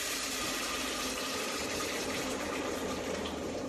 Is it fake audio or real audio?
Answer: fake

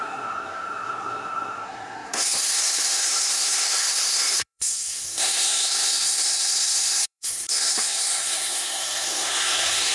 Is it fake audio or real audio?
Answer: fake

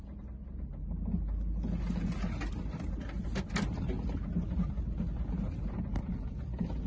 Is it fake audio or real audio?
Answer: real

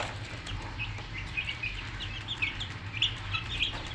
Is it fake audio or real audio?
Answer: real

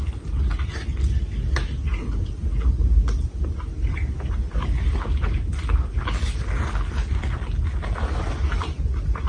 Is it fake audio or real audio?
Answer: real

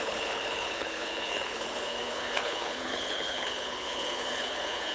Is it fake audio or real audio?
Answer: fake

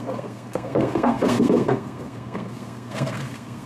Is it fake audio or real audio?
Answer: fake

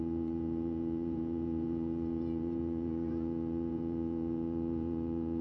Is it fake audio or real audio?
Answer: fake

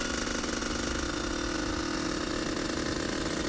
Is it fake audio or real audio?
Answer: real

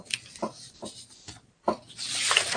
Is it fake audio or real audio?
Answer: real